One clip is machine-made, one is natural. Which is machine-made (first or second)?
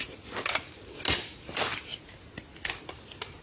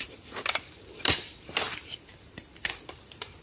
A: second